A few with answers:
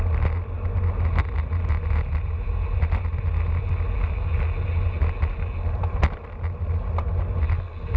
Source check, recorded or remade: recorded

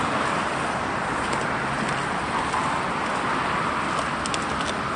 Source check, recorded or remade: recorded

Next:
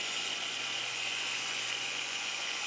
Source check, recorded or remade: remade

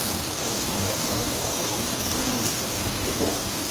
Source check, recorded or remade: remade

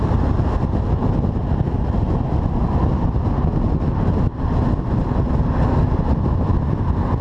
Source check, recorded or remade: recorded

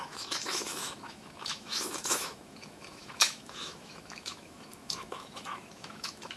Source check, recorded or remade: remade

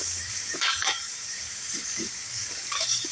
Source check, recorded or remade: remade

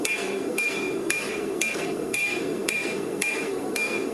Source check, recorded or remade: remade